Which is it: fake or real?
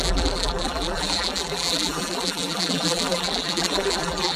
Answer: fake